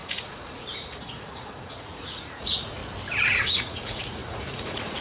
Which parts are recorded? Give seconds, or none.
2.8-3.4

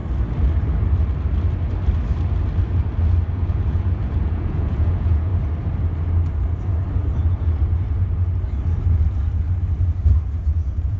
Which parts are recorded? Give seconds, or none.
0.0-3.3; 5.3-10.3